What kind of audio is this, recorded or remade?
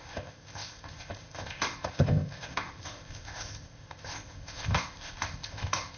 remade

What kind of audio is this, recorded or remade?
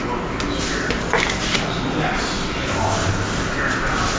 recorded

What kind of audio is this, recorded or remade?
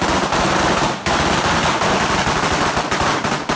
recorded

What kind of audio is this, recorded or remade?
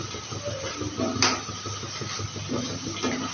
recorded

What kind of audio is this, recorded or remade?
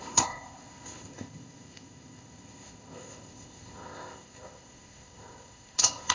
remade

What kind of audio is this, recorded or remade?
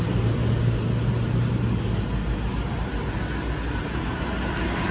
recorded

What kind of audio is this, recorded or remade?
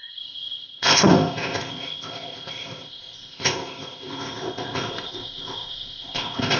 remade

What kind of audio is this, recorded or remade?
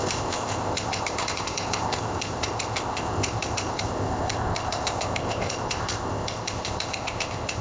remade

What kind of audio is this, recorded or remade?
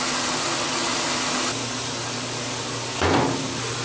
recorded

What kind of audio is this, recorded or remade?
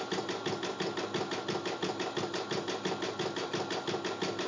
recorded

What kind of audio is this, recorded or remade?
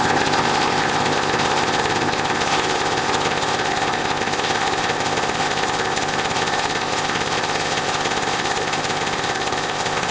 remade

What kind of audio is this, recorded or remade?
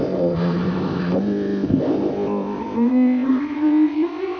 remade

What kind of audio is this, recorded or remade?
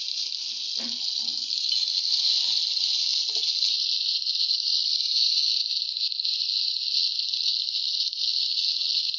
recorded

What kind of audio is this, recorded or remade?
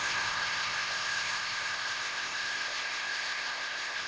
remade